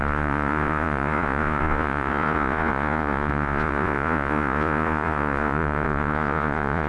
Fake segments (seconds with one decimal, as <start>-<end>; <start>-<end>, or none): 0.0-6.9